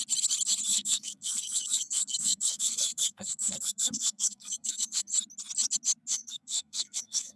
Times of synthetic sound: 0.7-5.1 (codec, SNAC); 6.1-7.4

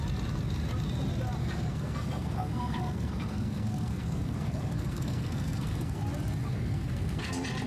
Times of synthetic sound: 1.4-6.0 (codec, SNAC); 6.4-7.3

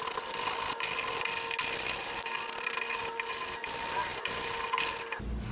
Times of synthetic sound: none

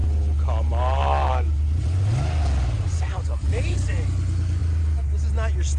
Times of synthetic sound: none

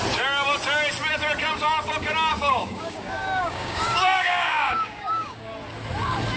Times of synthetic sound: 2.3-5.5 (codec, DAC)